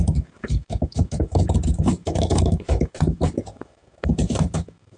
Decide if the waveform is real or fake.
fake